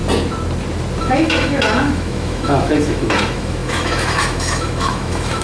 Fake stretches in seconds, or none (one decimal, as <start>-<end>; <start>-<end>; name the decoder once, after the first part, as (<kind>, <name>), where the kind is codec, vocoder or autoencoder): 1.0-5.4 (autoencoder, DAC-VAE)